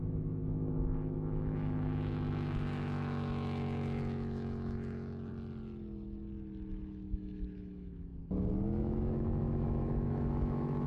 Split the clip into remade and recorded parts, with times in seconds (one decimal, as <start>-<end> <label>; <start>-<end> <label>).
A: 0.0-5.3 remade; 5.3-6.7 recorded; 6.7-8.1 remade; 8.1-8.8 recorded; 8.8-10.9 remade